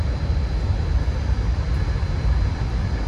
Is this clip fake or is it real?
real